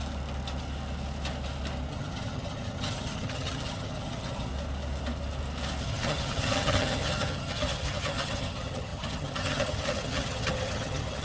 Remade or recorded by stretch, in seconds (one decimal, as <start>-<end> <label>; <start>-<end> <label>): 0.0-1.9 recorded; 1.9-4.5 remade; 4.5-5.8 recorded; 5.8-11.2 remade